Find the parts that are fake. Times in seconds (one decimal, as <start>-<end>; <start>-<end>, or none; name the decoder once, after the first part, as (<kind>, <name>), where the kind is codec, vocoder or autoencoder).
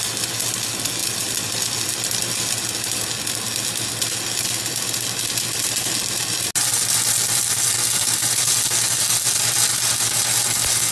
none